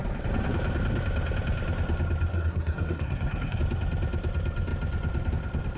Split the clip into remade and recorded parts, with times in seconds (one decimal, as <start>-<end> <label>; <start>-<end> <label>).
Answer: 0.0-2.3 recorded; 2.3-3.6 remade; 3.6-5.8 recorded